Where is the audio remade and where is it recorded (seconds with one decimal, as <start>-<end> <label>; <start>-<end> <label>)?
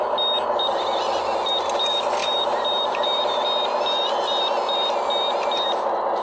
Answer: 0.0-2.2 recorded; 2.2-2.9 remade; 2.9-6.2 recorded